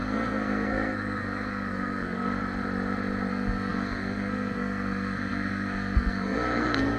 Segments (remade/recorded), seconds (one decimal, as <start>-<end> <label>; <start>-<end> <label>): 0.0-2.4 remade; 2.4-3.3 recorded; 3.3-7.0 remade